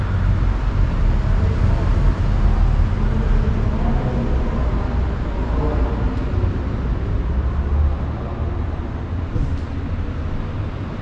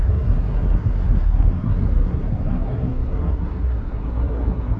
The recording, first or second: first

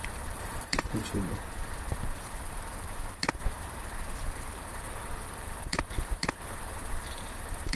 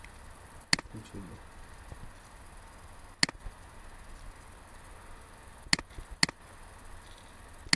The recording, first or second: second